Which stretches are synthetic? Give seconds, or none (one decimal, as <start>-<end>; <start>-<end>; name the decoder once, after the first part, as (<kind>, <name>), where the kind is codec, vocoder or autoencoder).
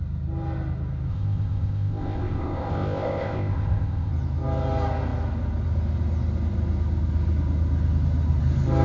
1.1-4.1 (codec, ZipCodec)